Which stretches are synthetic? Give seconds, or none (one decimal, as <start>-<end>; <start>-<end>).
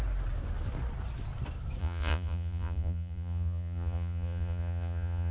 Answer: 1.8-5.3